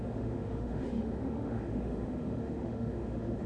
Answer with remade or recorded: remade